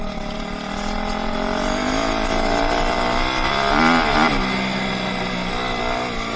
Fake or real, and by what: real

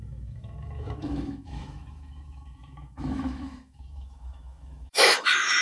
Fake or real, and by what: fake, autoencoder, DAC-VAE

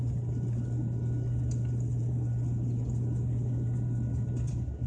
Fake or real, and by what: real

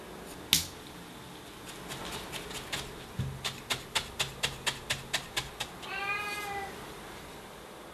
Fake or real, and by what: real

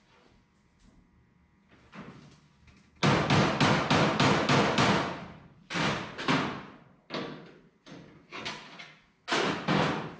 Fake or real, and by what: real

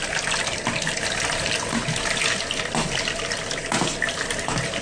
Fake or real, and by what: real